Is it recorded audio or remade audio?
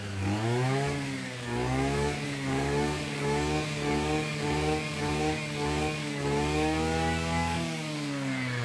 remade